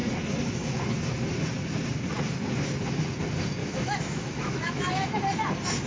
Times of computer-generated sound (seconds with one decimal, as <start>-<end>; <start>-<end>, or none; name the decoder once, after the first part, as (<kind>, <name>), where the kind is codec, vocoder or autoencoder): 3.6-5.2 (autoencoder, DAC-VAE)